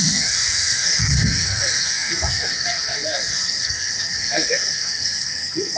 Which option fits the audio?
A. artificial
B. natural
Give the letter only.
A